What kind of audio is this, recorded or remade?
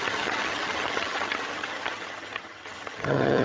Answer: remade